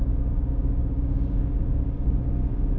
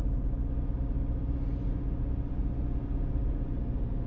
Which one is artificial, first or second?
first